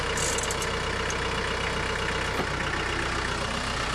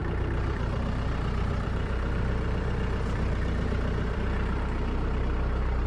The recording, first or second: first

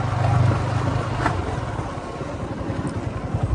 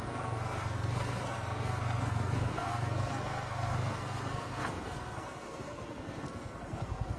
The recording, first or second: first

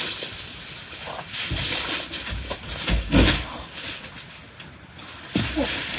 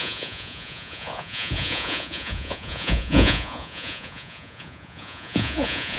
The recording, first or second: first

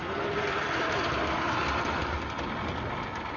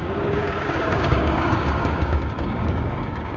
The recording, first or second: first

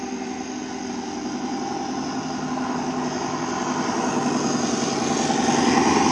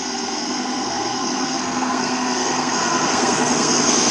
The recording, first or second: first